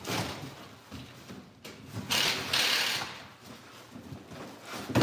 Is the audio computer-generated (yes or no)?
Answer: no